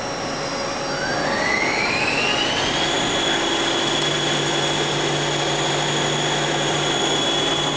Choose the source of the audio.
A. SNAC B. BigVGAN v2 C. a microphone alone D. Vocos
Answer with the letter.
C